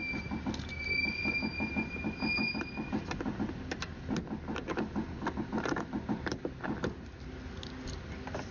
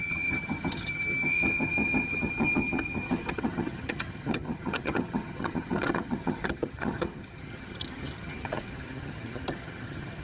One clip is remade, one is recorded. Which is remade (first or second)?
second